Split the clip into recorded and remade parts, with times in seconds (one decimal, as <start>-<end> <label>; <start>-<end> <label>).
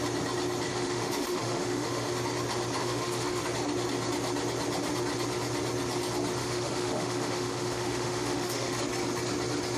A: 0.0-0.7 recorded; 0.7-2.1 remade; 2.1-2.8 recorded; 2.8-3.4 remade; 3.4-6.4 recorded; 6.4-8.8 remade; 8.8-9.8 recorded